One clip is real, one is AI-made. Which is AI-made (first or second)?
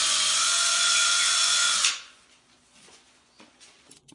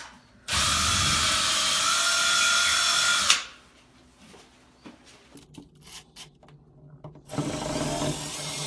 first